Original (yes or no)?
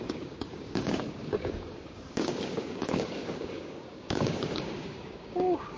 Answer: no